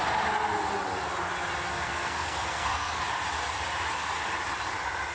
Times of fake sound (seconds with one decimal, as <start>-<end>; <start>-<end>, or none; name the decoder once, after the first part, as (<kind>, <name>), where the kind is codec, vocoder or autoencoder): 1.7-3.0 (codec, SNAC)